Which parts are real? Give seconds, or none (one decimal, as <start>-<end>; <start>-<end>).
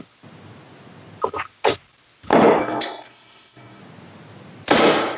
0.0-2.6; 3.8-5.2